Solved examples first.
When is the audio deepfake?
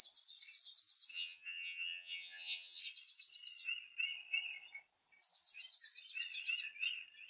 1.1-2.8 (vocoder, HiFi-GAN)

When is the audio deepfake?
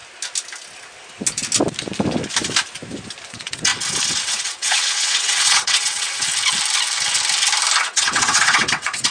3.3-3.7 (vocoder, WaveNeXt); 4.2-6.3; 7.8-9.1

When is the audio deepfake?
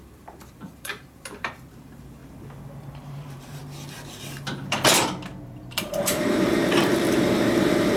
0.0-2.2 (vocoder, BigVGAN v2); 2.9-3.6; 5.3-8.0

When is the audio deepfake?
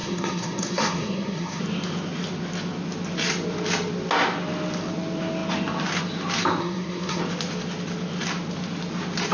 0.0-1.6 (codec, SNAC); 6.6-7.2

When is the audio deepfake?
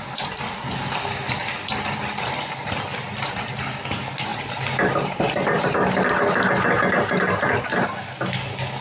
none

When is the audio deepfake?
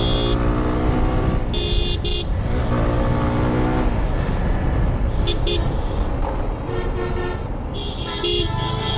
none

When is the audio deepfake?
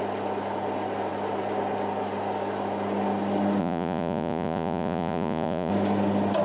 3.6-5.7 (vocoder, Vocos)